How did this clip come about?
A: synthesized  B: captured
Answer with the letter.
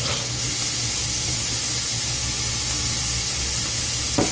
B